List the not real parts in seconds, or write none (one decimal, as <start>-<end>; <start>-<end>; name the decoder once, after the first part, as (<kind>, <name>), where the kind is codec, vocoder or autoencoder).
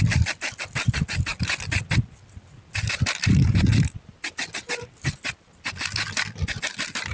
none